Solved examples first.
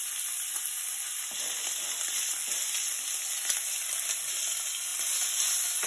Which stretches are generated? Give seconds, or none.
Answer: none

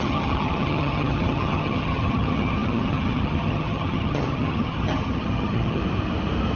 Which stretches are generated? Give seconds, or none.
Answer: 0.0-5.8 (vocoder, HiFi-GAN)

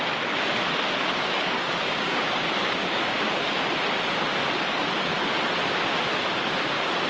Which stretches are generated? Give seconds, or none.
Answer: 1.1-3.4 (codec, DAC)

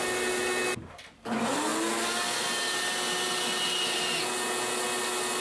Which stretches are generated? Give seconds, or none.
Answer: none

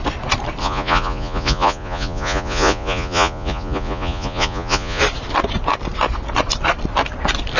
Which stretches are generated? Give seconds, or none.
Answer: 0.6-5.0 (vocoder, Vocos)

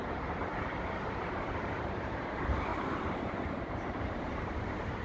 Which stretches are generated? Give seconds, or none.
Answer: 0.0-0.4 (vocoder, BigVGAN v2); 1.0-5.0

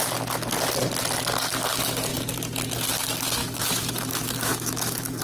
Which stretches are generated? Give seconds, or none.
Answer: 3.4-5.2 (autoencoder, DAC-VAE)

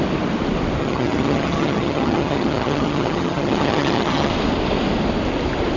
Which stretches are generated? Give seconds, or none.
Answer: 0.8-4.3 (vocoder, HiFi-GAN)